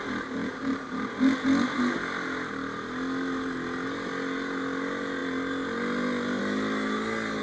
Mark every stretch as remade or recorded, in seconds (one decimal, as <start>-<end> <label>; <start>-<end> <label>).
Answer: 0.0-0.4 recorded; 0.4-1.3 remade; 1.3-7.4 recorded

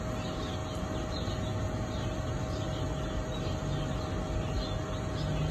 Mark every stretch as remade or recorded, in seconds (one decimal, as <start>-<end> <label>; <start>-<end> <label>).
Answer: 0.0-5.5 recorded

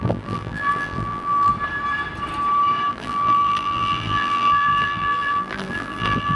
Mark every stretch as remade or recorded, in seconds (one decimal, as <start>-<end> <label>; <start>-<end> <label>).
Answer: 0.0-1.5 remade; 1.5-2.9 recorded; 2.9-6.4 remade